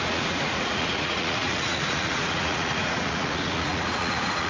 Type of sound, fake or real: fake